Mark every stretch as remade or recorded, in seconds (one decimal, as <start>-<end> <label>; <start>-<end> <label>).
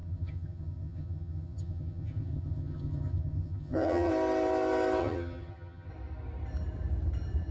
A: 0.0-4.1 remade; 4.1-5.0 recorded; 5.0-5.9 remade; 5.9-7.5 recorded